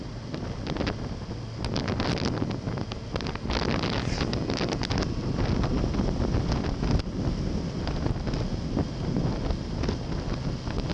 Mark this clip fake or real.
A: real